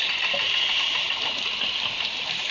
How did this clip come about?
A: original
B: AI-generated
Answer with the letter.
B